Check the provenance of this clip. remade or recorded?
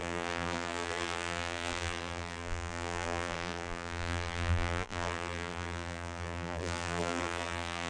remade